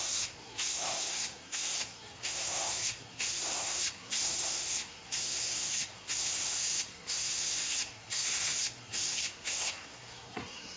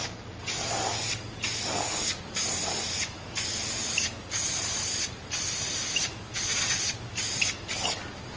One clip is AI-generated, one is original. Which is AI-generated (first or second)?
first